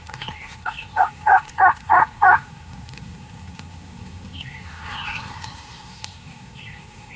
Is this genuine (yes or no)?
no